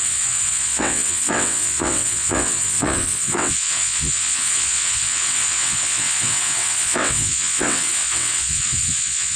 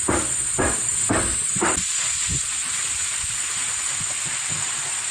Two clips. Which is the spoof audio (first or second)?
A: first